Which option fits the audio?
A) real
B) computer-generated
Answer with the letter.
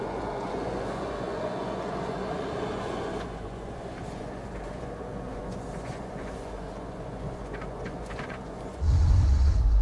B